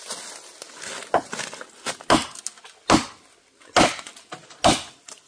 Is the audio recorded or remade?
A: recorded